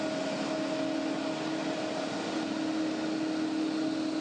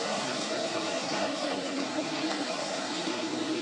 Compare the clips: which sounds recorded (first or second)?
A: first